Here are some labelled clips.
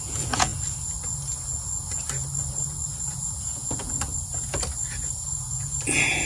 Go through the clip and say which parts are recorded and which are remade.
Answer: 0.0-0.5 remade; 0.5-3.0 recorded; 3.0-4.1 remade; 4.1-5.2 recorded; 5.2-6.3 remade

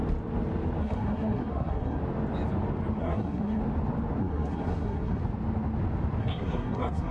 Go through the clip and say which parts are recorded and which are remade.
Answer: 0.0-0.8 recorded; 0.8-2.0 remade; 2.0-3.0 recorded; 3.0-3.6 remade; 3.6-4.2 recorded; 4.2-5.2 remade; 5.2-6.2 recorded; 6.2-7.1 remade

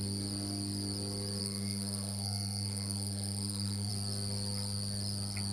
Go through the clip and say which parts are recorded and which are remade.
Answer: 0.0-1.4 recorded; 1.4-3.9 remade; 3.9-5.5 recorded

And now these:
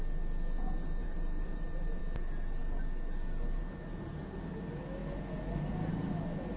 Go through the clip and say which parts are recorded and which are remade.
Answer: 0.0-1.0 recorded; 1.0-2.0 remade; 2.0-6.6 recorded